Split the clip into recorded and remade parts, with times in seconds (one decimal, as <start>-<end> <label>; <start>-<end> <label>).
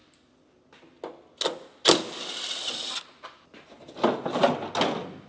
0.0-5.3 recorded